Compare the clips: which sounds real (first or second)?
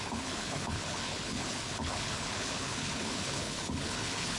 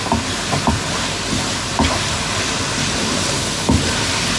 second